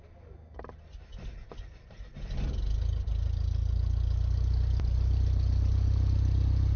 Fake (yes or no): no